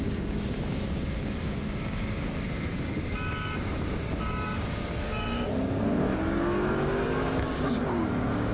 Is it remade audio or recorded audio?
remade